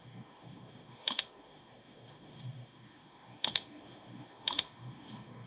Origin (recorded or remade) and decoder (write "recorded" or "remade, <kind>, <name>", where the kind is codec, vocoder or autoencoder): remade, autoencoder, DAC-VAE